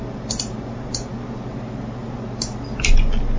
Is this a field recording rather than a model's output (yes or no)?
yes